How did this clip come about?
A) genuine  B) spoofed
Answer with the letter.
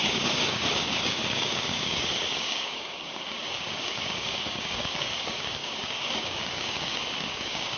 B